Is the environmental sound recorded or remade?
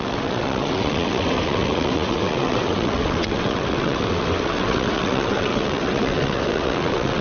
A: remade